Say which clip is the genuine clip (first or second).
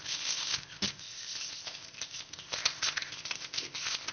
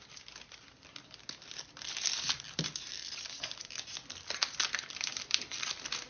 second